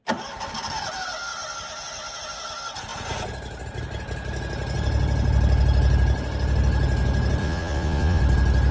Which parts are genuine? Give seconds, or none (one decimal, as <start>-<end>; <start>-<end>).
0.0-7.4; 8.2-8.7